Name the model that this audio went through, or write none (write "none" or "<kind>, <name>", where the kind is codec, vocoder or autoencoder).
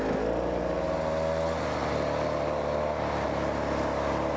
none